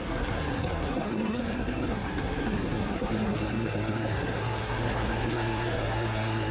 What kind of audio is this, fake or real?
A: fake